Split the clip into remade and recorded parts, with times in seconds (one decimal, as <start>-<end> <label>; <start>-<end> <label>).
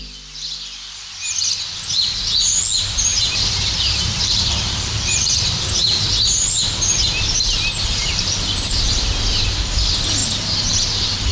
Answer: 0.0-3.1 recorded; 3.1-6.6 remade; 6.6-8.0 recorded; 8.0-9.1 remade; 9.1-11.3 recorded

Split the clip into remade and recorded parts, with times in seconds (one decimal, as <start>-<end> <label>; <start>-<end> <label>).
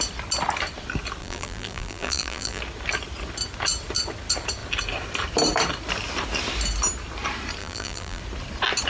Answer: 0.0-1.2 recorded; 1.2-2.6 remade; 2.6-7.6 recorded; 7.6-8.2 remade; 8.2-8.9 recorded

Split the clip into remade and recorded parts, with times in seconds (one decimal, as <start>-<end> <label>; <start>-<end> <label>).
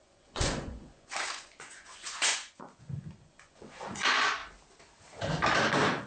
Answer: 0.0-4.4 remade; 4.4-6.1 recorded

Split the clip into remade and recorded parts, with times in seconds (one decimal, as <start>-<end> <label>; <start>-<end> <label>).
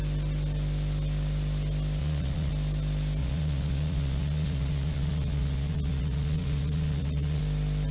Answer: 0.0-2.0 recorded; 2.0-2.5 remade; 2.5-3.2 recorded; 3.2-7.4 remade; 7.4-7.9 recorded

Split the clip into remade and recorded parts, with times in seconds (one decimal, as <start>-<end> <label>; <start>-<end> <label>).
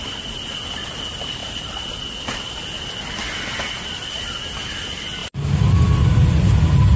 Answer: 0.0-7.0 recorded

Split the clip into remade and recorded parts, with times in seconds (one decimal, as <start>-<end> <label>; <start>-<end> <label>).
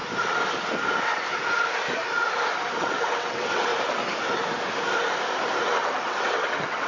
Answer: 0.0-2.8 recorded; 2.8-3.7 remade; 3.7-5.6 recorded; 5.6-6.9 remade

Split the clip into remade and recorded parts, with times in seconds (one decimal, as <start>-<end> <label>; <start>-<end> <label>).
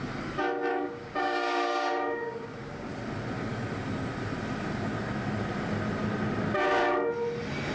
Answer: 0.0-0.7 recorded; 0.7-2.9 remade; 2.9-7.7 recorded